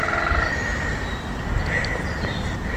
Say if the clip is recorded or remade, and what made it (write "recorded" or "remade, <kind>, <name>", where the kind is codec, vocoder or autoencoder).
recorded